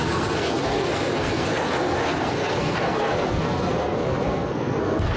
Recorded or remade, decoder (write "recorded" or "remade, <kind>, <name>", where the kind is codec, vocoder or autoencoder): remade, codec, SNAC